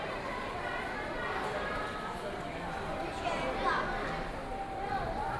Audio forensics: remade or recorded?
recorded